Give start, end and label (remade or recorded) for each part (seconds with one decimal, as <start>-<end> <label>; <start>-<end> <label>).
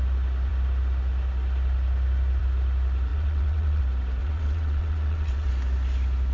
0.0-3.1 recorded; 3.1-3.8 remade; 3.8-4.2 recorded; 4.2-5.5 remade; 5.5-6.3 recorded